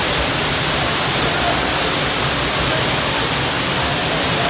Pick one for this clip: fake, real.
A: real